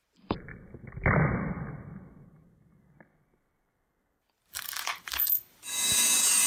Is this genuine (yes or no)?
no